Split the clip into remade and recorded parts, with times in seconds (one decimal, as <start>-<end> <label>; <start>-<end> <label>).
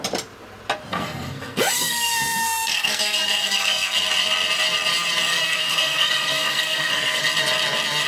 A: 0.0-0.9 recorded; 0.9-4.0 remade; 4.0-5.3 recorded; 5.3-7.2 remade; 7.2-8.1 recorded